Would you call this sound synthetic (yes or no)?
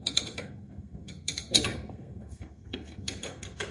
yes